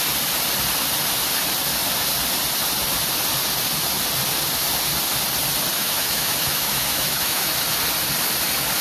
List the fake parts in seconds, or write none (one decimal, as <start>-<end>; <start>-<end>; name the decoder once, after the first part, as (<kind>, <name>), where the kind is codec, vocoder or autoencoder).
5.7-7.5 (autoencoder, DAC-VAE)